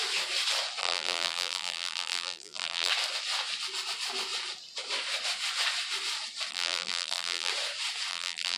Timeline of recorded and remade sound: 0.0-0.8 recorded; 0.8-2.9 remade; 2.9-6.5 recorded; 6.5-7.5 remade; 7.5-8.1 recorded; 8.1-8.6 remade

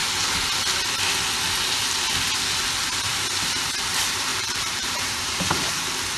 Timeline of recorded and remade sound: 0.0-4.3 recorded; 4.3-5.7 remade; 5.7-6.2 recorded

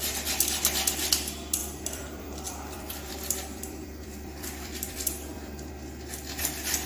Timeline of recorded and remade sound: 0.0-1.6 recorded; 1.6-5.7 remade; 5.7-6.9 recorded

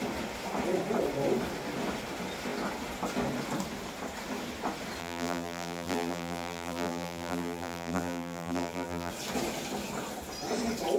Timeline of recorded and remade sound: 0.0-5.0 recorded; 5.0-9.1 remade; 9.1-11.0 recorded

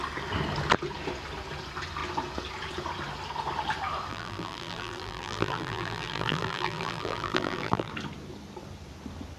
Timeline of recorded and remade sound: 0.0-4.1 recorded; 4.1-7.9 remade; 7.9-9.4 recorded

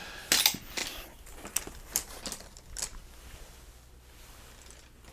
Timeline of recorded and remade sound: 0.0-5.1 recorded